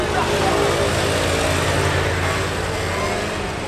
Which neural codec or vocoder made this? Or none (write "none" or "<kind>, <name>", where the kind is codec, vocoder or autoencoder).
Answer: none